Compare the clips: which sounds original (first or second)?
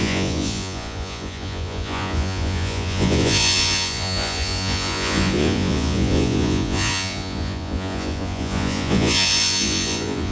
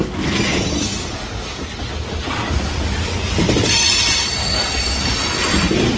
second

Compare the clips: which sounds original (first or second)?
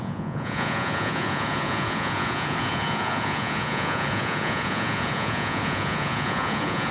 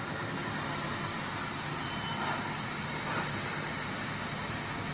second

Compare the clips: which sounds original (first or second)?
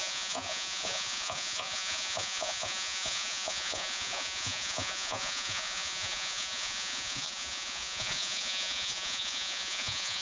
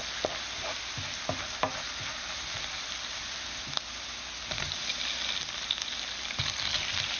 second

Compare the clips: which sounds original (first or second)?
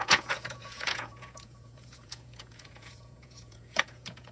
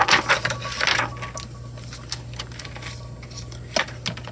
second